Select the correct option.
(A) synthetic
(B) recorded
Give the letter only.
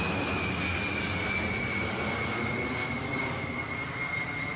B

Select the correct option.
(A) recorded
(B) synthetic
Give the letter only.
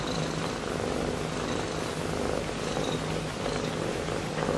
A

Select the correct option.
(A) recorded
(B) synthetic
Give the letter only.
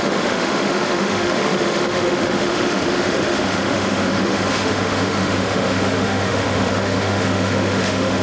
B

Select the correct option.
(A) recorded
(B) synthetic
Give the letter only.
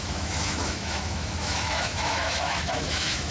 B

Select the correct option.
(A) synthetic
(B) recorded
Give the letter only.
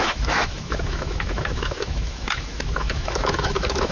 A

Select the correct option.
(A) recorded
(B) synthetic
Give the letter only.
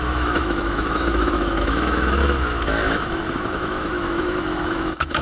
B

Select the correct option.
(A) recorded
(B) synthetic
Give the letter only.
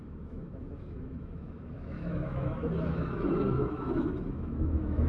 B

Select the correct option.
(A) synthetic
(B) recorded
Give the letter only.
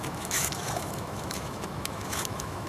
A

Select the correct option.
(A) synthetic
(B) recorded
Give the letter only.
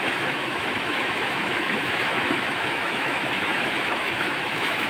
A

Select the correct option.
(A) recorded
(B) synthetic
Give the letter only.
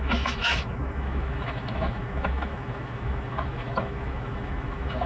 B